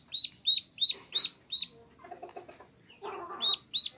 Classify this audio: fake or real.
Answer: real